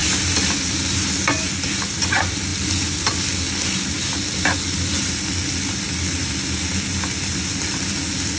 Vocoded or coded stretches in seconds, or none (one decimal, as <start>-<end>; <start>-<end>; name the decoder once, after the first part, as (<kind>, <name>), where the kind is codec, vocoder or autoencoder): none